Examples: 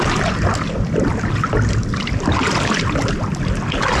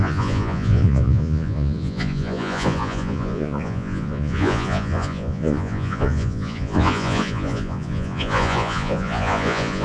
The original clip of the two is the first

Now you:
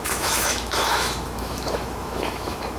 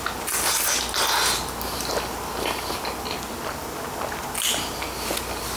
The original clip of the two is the second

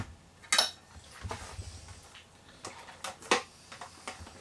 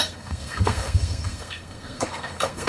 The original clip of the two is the first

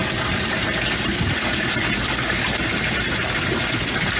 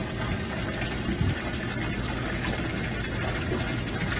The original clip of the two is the second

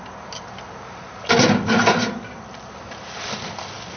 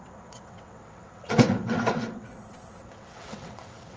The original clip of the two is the first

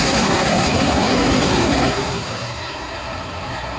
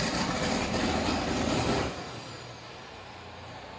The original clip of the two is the second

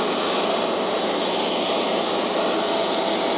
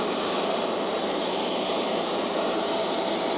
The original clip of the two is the first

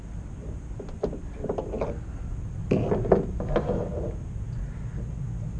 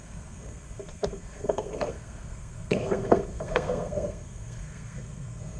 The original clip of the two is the first